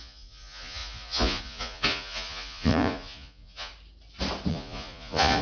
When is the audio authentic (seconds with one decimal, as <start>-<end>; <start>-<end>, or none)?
3.7-4.5